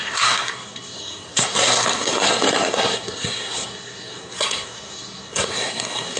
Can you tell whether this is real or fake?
fake